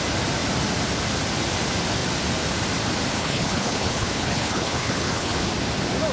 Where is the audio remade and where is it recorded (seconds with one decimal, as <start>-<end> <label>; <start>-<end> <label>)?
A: 0.0-3.2 recorded; 3.2-5.5 remade; 5.5-6.1 recorded